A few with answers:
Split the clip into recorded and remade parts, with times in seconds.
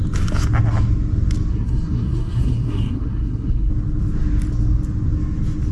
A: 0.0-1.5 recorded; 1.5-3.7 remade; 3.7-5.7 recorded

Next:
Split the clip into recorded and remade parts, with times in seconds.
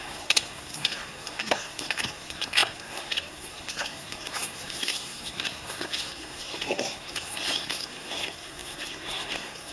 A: 0.0-9.7 remade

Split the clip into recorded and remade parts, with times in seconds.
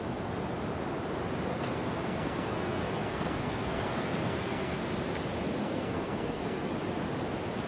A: 0.0-1.5 recorded; 1.5-4.8 remade; 4.8-5.6 recorded; 5.6-6.7 remade; 6.7-7.7 recorded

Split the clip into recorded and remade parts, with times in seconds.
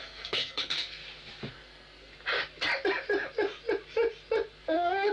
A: 0.0-1.0 remade; 1.0-1.5 recorded; 1.5-2.1 remade; 2.1-4.6 recorded; 4.6-5.1 remade